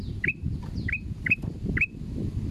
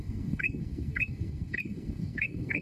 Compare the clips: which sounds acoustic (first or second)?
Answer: first